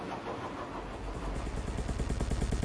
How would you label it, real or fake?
real